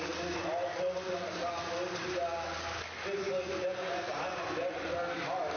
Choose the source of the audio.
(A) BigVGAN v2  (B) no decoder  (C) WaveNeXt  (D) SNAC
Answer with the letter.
B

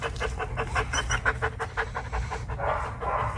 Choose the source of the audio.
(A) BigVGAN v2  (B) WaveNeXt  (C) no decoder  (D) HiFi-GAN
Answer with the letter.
C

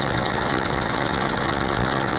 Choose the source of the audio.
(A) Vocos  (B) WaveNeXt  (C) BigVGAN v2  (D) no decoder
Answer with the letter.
B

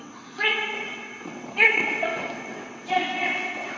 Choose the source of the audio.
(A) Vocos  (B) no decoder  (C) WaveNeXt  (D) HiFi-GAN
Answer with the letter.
C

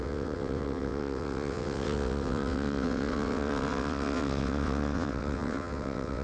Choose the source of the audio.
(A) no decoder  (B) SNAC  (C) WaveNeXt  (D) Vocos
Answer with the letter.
C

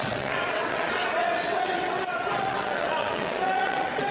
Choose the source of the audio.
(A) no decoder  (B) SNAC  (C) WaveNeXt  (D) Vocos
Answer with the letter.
C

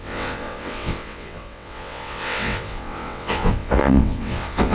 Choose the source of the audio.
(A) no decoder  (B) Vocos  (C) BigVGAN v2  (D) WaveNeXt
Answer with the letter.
D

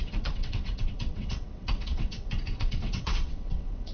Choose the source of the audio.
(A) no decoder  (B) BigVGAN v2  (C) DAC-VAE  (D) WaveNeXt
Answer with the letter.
D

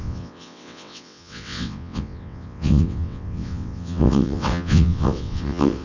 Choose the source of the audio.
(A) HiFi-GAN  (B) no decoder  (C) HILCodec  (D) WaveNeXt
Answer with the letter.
D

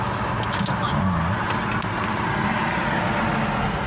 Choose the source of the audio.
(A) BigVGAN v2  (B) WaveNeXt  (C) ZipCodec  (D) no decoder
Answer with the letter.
D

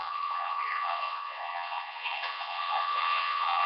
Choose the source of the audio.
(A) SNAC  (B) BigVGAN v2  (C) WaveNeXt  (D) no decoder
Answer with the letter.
C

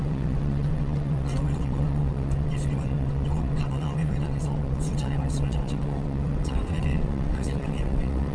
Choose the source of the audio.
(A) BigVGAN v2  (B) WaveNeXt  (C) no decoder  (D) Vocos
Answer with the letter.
B